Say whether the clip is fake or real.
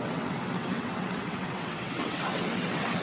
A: fake